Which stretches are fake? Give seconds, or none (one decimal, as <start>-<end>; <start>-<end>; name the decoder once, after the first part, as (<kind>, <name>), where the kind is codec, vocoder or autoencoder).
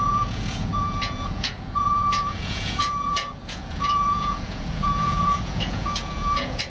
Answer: 0.0-6.7 (vocoder, Vocos)